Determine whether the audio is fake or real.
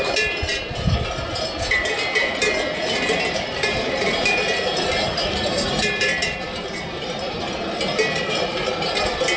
fake